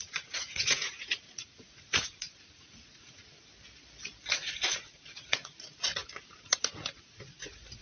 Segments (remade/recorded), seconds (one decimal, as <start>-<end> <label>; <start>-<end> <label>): 0.0-3.2 remade; 3.2-4.3 recorded; 4.3-7.8 remade